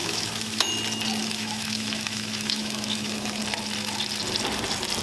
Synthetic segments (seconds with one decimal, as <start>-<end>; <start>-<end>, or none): 0.0-0.7; 1.2-3.4